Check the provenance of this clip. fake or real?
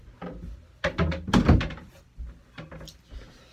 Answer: real